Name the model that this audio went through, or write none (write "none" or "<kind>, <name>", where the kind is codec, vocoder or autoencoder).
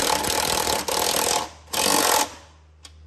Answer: none